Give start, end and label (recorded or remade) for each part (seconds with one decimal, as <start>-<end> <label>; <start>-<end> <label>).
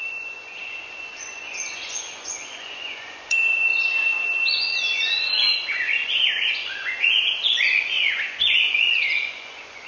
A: 0.0-9.9 remade